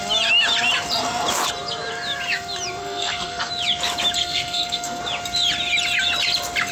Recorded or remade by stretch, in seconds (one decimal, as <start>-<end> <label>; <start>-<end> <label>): 0.0-2.8 recorded; 2.8-3.5 remade; 3.5-4.2 recorded; 4.2-5.0 remade; 5.0-6.7 recorded